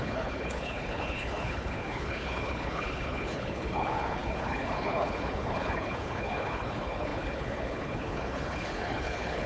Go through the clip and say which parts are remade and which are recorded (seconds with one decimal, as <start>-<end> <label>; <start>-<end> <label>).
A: 0.0-9.5 remade